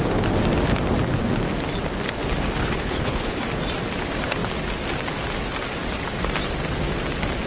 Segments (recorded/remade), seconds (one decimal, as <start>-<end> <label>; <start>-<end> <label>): 0.0-2.6 recorded; 2.6-3.4 remade; 3.4-7.5 recorded